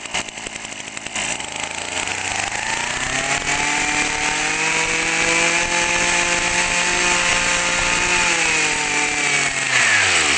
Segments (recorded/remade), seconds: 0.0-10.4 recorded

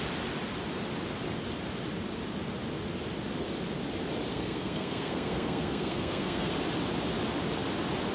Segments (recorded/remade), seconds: 0.0-4.3 recorded; 4.3-6.5 remade; 6.5-8.1 recorded

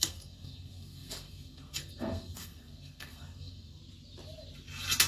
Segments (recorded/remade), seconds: 0.0-3.8 remade; 3.8-5.1 recorded

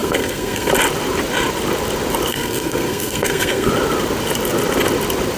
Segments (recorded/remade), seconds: 0.0-0.7 remade; 0.7-2.3 recorded; 2.3-3.7 remade; 3.7-5.4 recorded

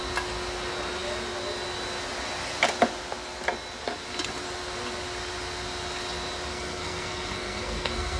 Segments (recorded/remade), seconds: 0.0-6.5 recorded; 6.5-8.2 remade

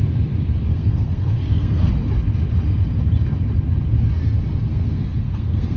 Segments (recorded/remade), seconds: 0.0-0.7 recorded; 0.7-1.9 remade; 1.9-4.7 recorded; 4.7-5.8 remade